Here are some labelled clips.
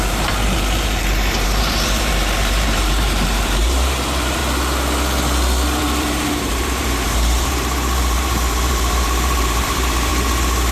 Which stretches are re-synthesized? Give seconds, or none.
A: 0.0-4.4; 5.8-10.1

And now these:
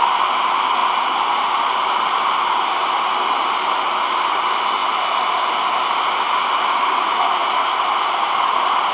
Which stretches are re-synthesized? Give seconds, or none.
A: none

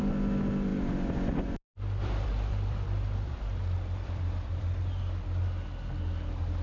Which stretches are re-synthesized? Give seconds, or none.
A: 0.7-4.7